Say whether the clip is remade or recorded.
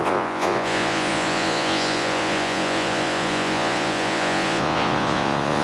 remade